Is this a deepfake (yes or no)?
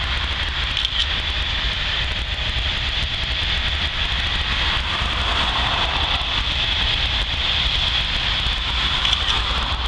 yes